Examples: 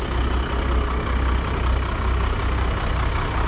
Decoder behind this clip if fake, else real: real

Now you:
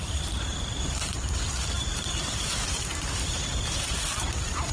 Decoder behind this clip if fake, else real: fake, vocoder, BigVGAN v2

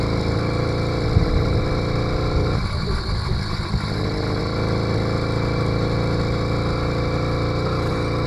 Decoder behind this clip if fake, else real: real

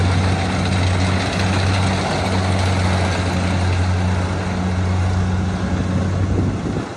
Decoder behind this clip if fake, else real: real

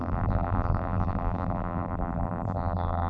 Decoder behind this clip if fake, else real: fake, vocoder, BigVGAN v2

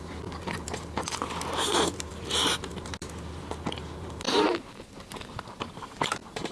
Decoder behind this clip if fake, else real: real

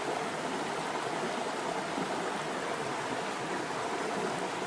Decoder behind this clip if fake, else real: real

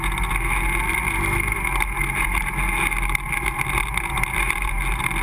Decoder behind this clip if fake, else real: real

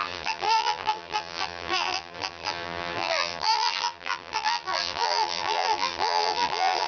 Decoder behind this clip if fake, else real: fake, vocoder, BigVGAN v2